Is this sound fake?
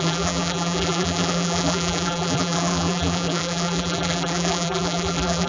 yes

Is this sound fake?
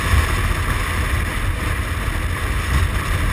no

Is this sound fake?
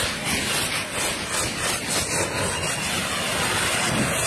no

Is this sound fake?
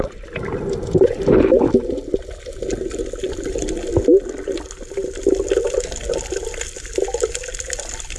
no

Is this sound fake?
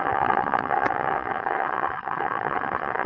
yes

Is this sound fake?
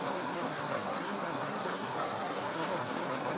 yes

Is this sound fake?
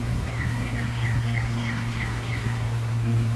yes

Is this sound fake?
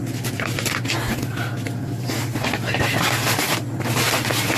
no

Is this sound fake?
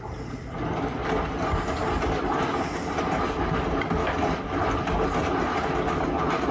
no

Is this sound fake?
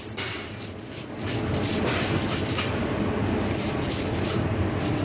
no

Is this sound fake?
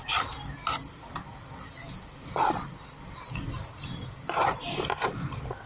yes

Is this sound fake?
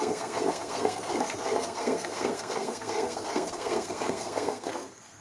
yes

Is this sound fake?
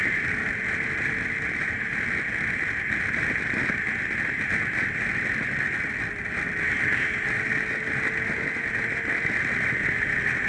no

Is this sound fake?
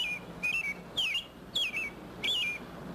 no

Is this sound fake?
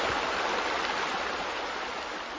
no